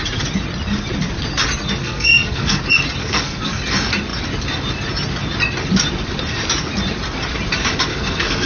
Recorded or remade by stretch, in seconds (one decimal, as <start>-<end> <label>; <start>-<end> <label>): 0.0-1.8 recorded; 1.8-2.6 remade; 2.6-3.0 recorded; 3.0-3.6 remade; 3.6-7.9 recorded; 7.9-8.5 remade